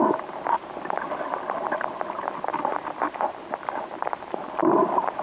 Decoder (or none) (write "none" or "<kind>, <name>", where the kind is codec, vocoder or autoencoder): none